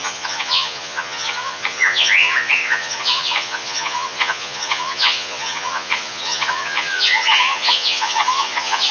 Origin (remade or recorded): remade